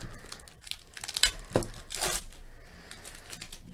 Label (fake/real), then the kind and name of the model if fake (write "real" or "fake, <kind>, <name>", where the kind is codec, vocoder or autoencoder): real